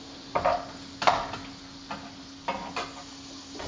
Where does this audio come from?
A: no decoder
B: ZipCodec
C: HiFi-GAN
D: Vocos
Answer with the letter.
A